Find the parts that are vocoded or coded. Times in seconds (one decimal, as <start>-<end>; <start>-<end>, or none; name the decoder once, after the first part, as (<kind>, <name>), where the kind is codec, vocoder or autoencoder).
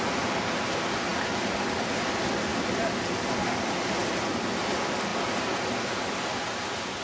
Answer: none